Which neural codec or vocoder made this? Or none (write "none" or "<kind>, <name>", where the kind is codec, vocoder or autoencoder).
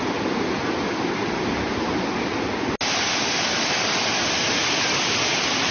none